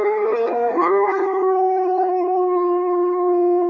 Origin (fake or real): fake